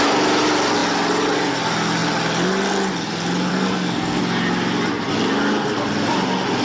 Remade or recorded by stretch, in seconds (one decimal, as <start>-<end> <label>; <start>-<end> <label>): 0.0-3.5 recorded; 3.5-4.2 remade; 4.2-6.6 recorded